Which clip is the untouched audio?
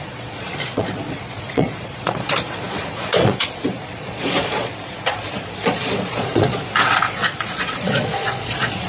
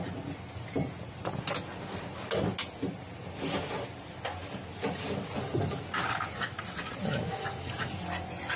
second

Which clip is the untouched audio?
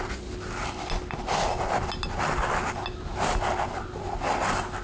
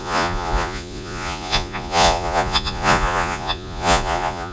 first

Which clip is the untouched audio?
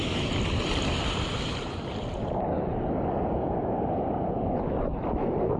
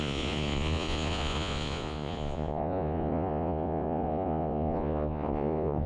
first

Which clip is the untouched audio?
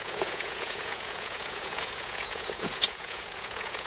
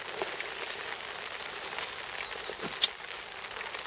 second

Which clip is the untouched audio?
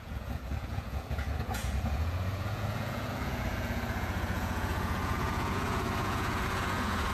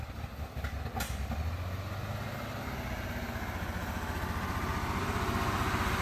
second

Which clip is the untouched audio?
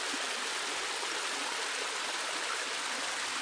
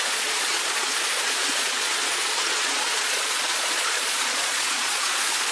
first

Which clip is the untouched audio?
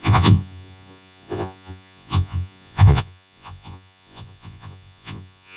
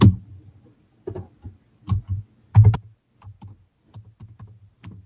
second